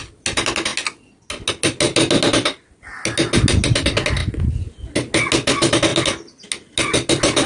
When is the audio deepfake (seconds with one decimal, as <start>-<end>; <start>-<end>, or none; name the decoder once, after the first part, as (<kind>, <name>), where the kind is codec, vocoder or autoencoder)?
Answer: none